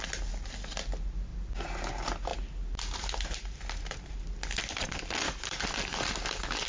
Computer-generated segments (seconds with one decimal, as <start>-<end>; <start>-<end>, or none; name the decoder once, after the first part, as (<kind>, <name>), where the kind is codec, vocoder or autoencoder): none